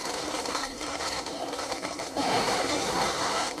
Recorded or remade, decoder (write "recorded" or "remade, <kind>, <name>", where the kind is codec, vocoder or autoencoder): remade, codec, SNAC